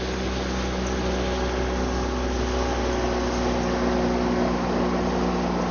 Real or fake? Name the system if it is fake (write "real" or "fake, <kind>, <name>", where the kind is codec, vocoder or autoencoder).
real